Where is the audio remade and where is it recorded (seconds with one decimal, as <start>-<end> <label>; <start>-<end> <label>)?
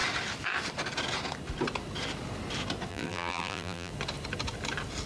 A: 0.0-2.9 recorded; 2.9-3.9 remade; 3.9-5.1 recorded